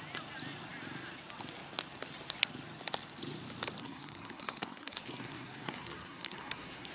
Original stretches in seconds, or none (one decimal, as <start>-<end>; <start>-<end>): 0.0-3.8